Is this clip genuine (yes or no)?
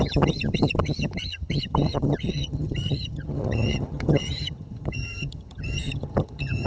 no